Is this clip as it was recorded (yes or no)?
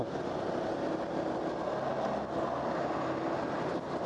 yes